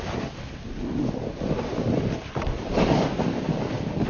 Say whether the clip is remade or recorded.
recorded